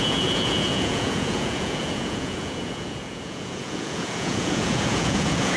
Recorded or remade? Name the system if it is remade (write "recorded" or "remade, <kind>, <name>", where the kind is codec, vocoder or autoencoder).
remade, vocoder, Vocos